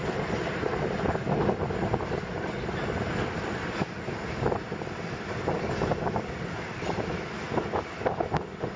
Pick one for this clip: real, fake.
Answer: real